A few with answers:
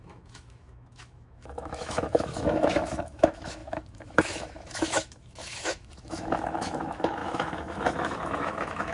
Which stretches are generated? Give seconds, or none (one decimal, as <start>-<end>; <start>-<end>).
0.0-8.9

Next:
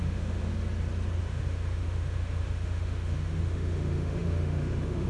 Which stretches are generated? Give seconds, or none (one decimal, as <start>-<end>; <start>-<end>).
0.0-0.5; 1.2-5.1

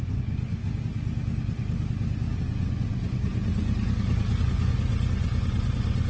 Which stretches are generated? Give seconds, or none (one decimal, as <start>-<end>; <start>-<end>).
0.0-0.6; 2.4-3.3; 4.4-6.1